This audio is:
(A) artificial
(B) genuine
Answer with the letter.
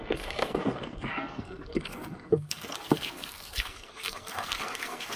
A